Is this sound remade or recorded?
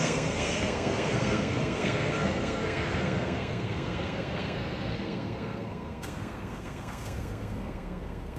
remade